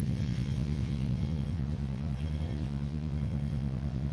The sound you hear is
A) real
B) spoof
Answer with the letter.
B